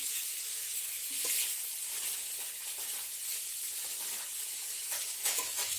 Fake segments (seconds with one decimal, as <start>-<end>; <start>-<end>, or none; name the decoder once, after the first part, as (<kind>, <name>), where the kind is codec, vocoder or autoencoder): 0.0-1.0 (autoencoder, DAC-VAE); 4.5-5.8